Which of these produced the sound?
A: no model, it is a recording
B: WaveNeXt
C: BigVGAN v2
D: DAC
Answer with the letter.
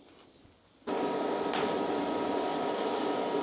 A